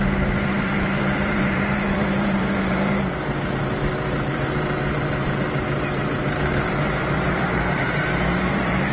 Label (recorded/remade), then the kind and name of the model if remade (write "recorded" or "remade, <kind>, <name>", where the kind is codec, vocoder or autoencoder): remade, vocoder, BigVGAN v2